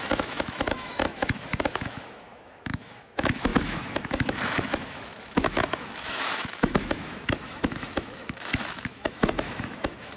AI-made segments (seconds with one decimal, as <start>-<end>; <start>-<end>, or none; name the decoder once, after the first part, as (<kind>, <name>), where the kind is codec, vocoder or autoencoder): 0.0-10.2 (autoencoder, DAC-VAE)